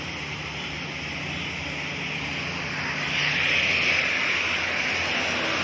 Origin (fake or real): real